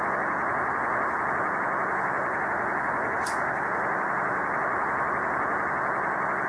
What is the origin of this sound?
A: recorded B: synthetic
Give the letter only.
A